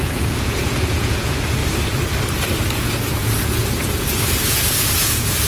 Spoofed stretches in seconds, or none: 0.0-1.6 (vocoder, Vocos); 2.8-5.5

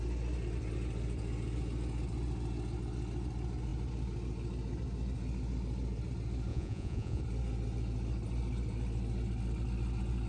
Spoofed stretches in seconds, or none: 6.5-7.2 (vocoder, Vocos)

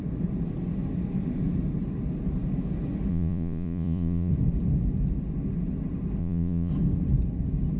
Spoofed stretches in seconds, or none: 3.1-4.3 (vocoder, Vocos); 6.2-6.7

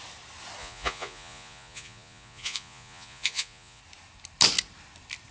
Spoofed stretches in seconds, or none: 0.6-3.8 (vocoder, Vocos)

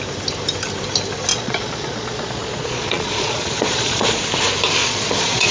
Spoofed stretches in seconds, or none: 1.3-4.2 (vocoder, Vocos); 4.8-5.5